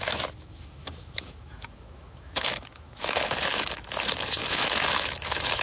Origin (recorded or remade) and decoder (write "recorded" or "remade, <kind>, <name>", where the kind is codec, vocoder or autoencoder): remade, autoencoder, DAC-VAE